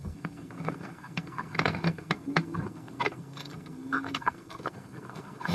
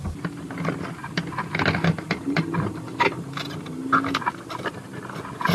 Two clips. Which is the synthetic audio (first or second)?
first